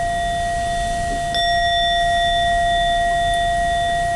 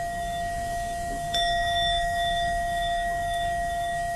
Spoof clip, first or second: second